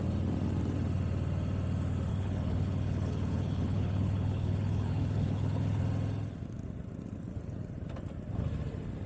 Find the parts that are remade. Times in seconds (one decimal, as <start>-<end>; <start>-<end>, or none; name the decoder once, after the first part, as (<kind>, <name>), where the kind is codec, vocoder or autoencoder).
2.1-5.8 (codec, HILCodec)